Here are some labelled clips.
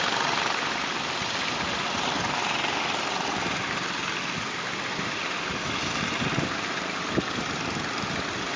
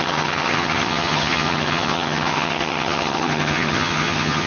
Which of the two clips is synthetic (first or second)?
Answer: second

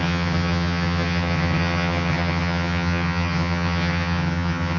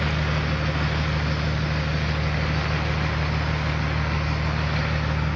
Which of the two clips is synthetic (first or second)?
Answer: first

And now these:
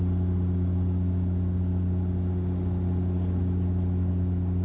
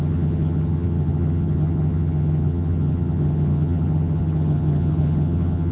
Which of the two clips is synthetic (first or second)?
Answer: second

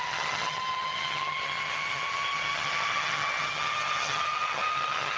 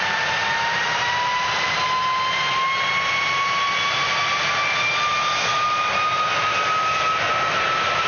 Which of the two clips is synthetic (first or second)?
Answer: first